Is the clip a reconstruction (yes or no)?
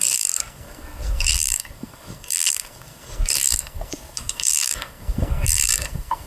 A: yes